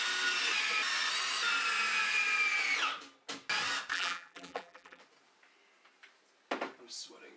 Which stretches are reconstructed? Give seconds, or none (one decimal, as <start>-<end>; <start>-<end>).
3.9-5.0